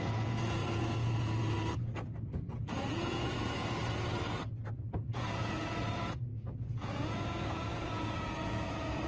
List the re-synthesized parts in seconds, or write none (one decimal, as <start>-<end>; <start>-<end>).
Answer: 0.0-3.8; 4.7-9.1